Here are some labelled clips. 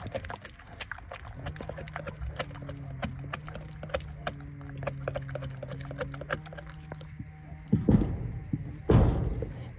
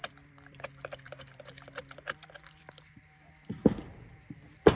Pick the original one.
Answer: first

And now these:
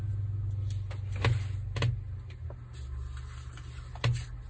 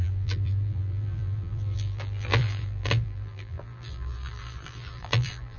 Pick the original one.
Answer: first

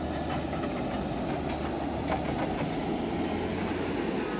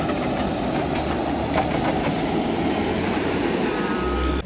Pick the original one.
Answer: first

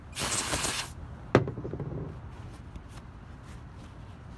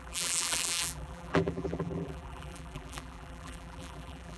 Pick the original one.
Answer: first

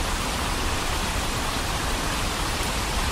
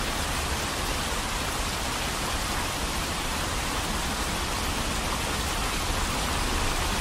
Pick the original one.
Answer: second